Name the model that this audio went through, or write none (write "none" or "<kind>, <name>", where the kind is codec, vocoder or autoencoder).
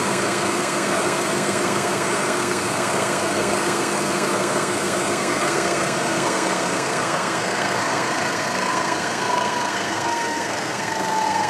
codec, SNAC